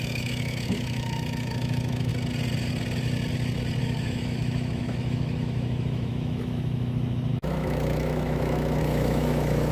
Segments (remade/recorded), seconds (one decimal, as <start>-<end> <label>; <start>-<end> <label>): 0.0-2.1 remade; 2.1-3.8 recorded; 3.8-9.7 remade